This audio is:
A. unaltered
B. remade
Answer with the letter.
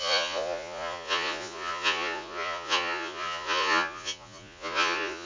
B